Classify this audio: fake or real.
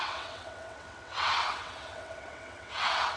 fake